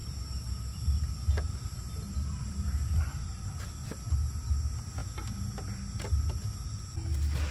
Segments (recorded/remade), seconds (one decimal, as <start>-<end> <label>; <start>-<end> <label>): 0.0-4.5 remade; 4.5-7.5 recorded